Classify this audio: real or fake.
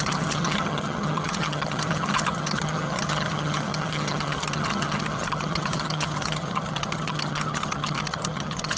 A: fake